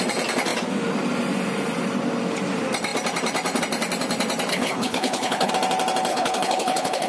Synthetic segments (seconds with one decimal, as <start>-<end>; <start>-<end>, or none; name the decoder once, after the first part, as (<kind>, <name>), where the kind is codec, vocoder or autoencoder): 4.5-5.5 (codec, HILCodec); 6.1-7.1